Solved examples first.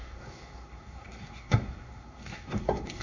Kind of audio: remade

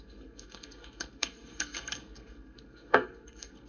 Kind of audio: remade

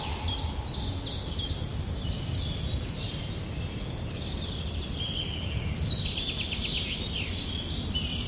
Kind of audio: recorded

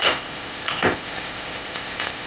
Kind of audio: remade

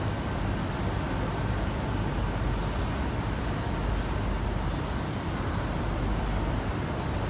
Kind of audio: recorded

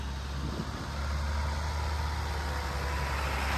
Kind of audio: recorded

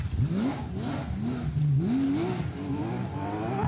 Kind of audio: recorded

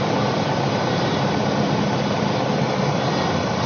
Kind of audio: recorded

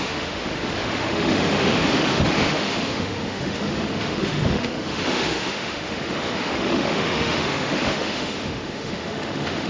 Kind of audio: remade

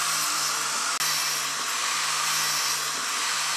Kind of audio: recorded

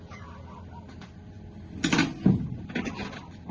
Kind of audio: recorded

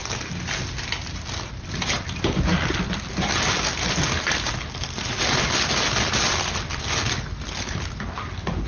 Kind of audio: recorded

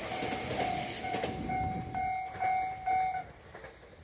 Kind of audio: recorded